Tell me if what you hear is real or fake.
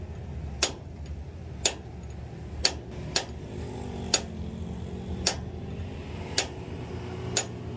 real